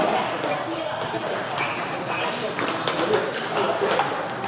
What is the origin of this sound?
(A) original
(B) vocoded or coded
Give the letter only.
A